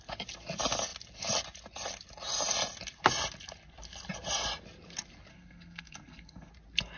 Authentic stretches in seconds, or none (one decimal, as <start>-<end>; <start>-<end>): 0.0-5.3; 6.5-7.0